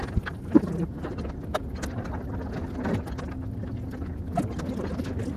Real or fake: real